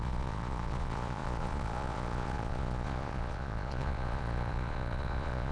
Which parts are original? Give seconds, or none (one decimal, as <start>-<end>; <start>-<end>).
none